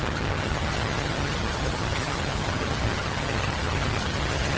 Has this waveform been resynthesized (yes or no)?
yes